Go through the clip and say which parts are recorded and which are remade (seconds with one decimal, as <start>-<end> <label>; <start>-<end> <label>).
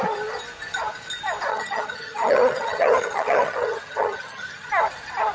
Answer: 0.0-1.5 recorded; 1.5-4.7 remade; 4.7-5.3 recorded